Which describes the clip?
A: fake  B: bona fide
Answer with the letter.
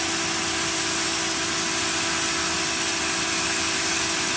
B